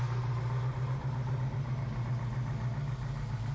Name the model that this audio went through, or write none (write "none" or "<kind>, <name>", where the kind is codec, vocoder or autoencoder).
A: none